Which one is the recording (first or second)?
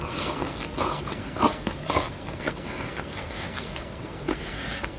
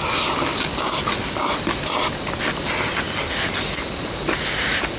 second